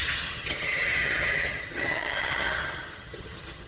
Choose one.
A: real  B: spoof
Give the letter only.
B